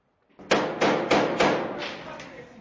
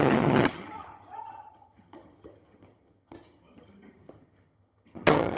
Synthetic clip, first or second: second